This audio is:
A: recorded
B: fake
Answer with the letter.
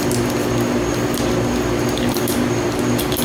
A